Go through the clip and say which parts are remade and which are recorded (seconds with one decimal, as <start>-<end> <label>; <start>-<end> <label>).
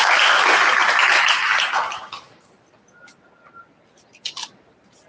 0.0-5.1 recorded